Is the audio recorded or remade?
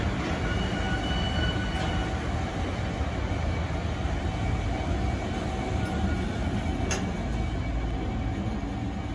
recorded